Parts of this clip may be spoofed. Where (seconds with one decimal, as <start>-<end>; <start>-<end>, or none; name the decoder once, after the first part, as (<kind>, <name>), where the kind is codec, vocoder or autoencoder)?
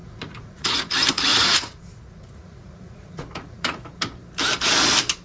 0.0-0.9 (vocoder, Vocos); 1.3-3.8